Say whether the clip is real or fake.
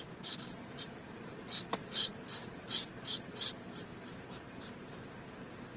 fake